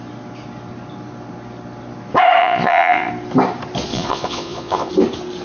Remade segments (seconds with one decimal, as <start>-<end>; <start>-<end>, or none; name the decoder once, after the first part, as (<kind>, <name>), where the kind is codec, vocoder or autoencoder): 2.4-3.1 (vocoder, Vocos); 3.9-4.9